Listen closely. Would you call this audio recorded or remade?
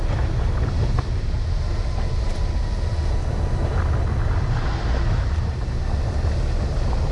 recorded